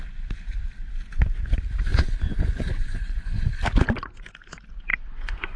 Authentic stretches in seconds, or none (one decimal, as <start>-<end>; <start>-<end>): 0.0-1.9; 3.5-4.9